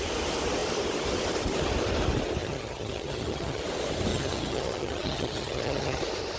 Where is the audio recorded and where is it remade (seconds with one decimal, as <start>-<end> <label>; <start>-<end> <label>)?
0.0-2.4 recorded; 2.4-3.6 remade; 3.6-4.1 recorded; 4.1-6.0 remade; 6.0-6.4 recorded